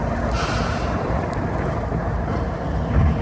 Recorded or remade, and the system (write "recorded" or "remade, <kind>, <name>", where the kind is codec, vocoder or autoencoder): recorded